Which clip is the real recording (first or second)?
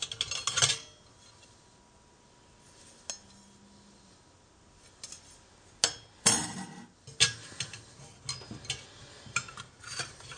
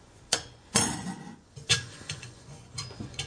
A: first